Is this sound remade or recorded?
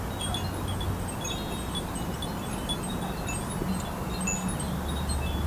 recorded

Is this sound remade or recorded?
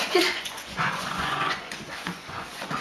remade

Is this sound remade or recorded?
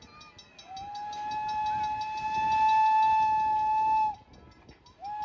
recorded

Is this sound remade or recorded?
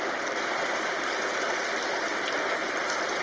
recorded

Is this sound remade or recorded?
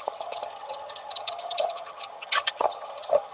remade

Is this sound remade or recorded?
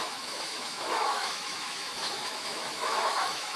remade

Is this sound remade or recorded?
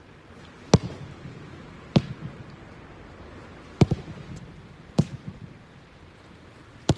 recorded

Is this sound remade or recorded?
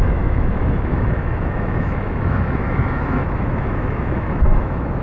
remade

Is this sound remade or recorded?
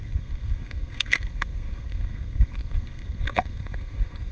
remade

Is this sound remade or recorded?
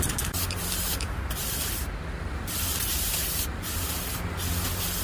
recorded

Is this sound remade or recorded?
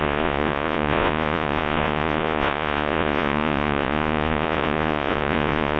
remade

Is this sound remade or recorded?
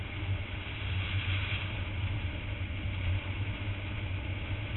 recorded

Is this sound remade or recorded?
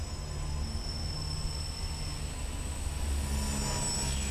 recorded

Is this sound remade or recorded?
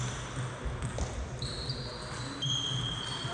recorded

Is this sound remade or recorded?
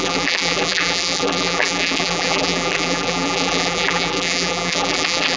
remade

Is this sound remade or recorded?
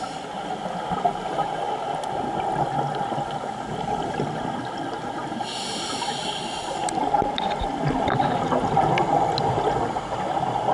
recorded